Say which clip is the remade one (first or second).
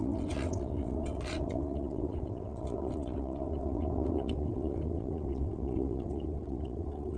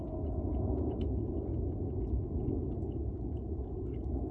first